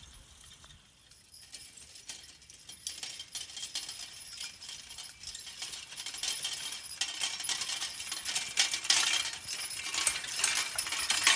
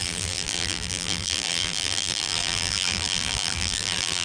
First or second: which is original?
first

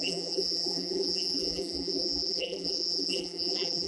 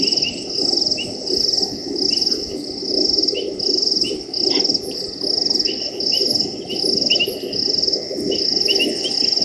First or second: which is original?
second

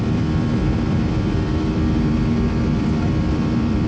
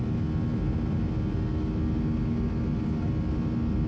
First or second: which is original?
second